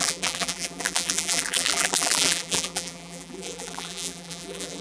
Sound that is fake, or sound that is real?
fake